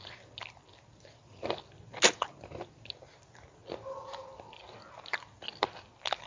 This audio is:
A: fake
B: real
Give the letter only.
B